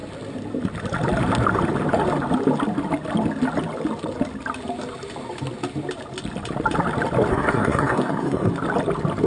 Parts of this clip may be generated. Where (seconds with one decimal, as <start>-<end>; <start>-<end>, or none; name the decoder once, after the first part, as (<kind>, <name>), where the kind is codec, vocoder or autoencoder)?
7.3-8.5 (codec, SNAC)